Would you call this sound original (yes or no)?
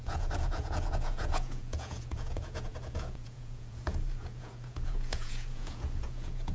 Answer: no